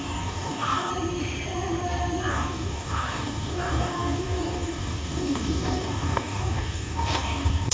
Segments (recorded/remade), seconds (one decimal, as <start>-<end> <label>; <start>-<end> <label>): 0.0-0.9 remade; 0.9-2.3 recorded; 2.3-7.7 remade